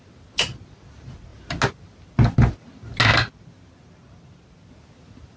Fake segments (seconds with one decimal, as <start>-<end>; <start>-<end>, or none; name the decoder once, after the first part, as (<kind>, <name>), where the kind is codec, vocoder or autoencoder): none